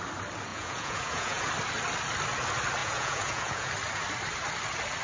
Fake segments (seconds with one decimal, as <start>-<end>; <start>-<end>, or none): 0.5-1.5; 2.8-3.7

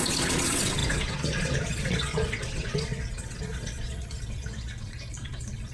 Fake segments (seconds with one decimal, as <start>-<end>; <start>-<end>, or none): 0.0-5.7

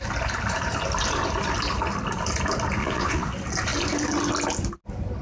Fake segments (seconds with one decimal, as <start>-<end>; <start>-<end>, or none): 2.8-3.3

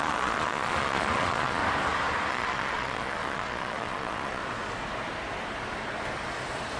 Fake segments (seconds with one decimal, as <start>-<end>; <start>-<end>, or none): 0.0-1.6; 2.3-4.4

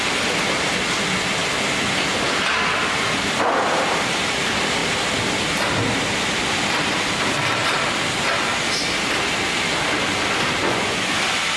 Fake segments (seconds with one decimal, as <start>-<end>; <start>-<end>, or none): 10.6-11.1

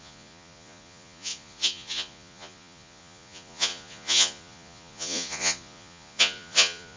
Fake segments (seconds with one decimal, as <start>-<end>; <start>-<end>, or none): 0.0-7.0